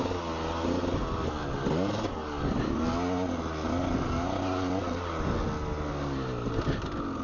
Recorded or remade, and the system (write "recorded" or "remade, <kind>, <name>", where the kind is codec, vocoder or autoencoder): recorded